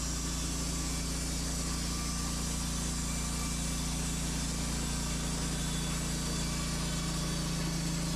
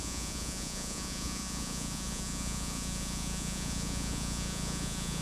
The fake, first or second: second